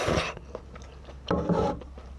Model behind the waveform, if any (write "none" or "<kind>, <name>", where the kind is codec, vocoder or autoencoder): none